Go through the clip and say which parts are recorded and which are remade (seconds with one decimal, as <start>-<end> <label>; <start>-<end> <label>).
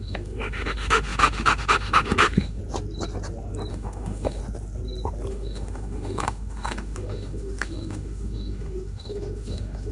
0.0-2.6 remade; 2.6-3.7 recorded; 3.7-4.4 remade; 4.4-5.3 recorded; 5.3-9.9 remade